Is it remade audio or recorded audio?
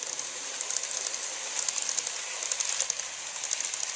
recorded